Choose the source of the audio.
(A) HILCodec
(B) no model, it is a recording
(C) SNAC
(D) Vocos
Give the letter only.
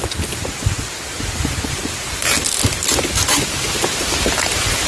B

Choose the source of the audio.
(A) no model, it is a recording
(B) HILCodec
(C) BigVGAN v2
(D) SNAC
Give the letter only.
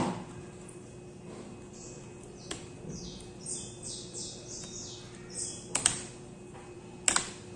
A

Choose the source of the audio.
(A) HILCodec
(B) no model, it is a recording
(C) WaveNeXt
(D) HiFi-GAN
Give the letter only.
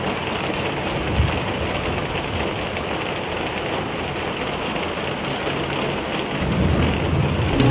B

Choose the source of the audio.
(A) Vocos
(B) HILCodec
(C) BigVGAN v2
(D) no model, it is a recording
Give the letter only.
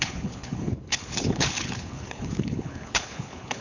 B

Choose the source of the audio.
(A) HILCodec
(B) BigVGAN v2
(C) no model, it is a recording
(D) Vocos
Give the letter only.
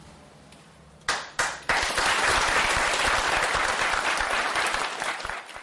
C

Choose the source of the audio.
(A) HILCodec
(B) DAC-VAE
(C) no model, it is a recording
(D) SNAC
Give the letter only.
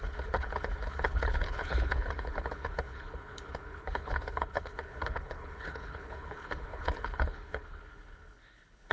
A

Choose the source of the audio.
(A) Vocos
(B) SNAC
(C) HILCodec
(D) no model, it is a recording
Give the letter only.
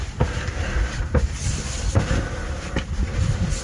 D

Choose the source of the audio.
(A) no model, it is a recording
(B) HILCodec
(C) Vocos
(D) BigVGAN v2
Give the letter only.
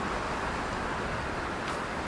A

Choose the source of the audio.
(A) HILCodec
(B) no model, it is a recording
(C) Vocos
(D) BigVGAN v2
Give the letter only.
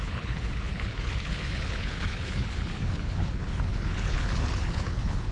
A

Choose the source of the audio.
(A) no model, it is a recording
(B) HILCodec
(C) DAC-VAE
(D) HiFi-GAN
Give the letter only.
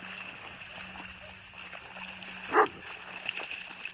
A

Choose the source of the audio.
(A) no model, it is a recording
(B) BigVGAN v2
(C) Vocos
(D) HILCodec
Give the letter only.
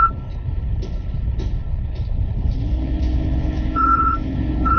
D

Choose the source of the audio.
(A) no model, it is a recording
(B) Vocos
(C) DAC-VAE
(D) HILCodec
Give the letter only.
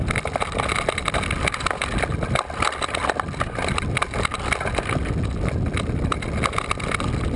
A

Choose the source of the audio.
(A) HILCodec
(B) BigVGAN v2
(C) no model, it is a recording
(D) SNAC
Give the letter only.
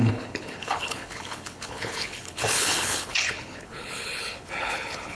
A